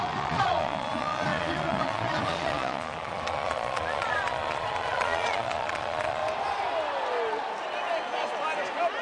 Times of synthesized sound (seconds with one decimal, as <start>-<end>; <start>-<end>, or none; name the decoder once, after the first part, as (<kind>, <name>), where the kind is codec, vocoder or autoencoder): 0.0-6.2 (vocoder, Vocos)